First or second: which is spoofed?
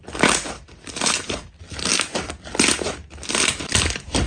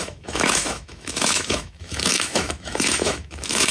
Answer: second